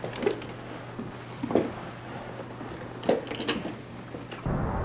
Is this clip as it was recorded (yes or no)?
yes